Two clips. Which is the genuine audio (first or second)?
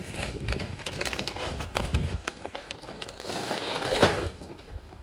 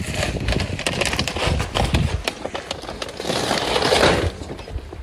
second